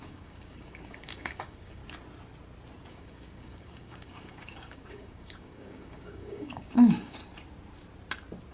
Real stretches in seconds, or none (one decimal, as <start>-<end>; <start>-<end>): 1.8-2.9; 7.2-8.5